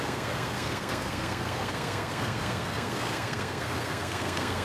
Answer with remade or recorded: remade